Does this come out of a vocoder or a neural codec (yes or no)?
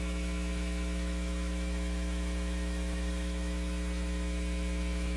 yes